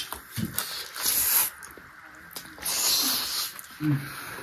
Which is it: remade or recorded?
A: recorded